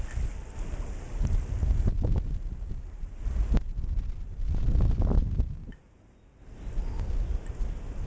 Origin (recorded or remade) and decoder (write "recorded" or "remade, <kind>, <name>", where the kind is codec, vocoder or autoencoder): recorded